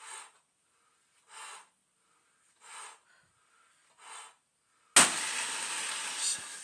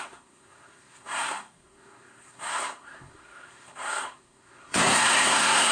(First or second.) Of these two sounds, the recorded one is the first